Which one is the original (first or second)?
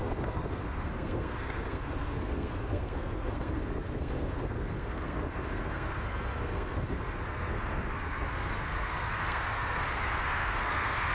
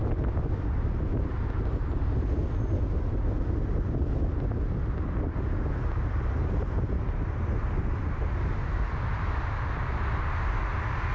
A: second